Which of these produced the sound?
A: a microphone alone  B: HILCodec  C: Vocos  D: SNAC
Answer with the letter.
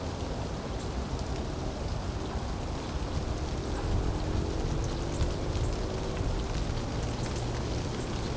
A